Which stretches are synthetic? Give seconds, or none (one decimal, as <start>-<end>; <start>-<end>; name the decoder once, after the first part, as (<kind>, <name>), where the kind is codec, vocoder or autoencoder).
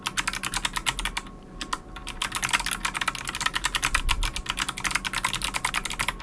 none